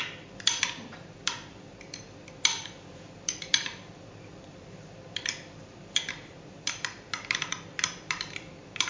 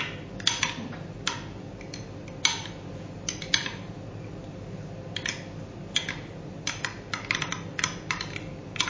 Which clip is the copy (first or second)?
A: first